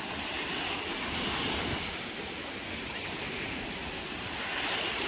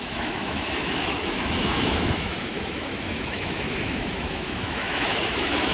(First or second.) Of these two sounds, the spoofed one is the second